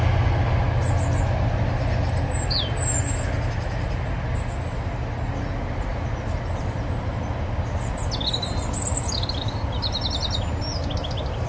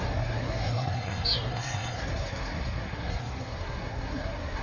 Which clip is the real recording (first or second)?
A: first